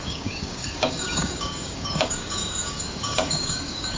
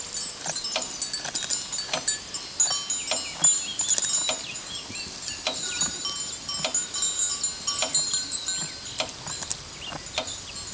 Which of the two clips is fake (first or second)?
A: first